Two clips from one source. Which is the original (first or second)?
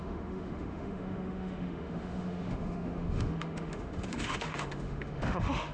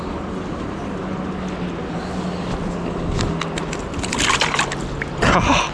second